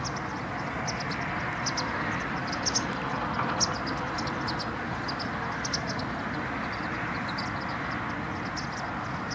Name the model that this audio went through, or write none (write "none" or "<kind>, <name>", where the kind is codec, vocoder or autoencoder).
none